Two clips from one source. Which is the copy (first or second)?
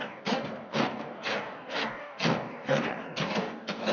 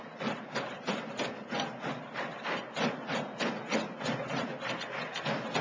first